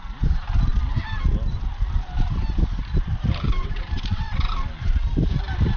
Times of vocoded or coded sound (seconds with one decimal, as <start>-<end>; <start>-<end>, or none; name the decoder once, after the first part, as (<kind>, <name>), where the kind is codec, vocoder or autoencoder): 3.6-4.5 (vocoder, WaveNeXt)